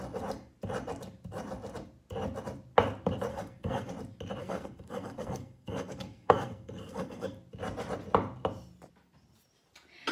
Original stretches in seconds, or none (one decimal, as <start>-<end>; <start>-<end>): 0.0-3.3; 3.9-4.4; 7.4-10.1